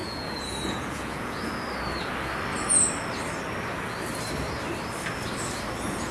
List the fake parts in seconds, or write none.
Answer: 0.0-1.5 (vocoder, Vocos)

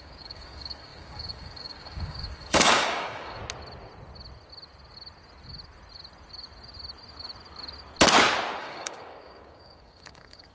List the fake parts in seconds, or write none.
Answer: 0.0-3.4 (codec, DAC); 8.6-10.5

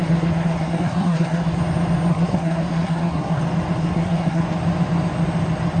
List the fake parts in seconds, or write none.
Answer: 0.0-1.6 (codec, SNAC); 2.1-3.4; 3.8-4.4

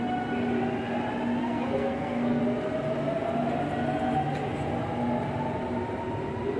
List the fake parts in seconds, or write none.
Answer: 1.4-2.4 (codec, SNAC)

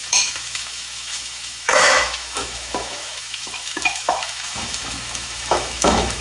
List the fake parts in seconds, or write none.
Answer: 0.0-6.2 (autoencoder, DAC-VAE)

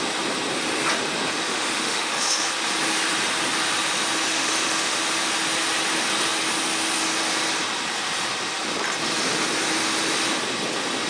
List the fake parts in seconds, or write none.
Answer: 1.5-2.5 (autoencoder, DAC-VAE); 4.3-5.0

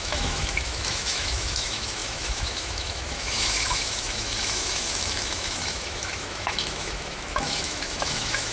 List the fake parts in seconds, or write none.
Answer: 0.0-8.5 (autoencoder, DAC-VAE)

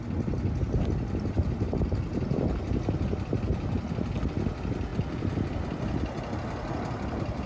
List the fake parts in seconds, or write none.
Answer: none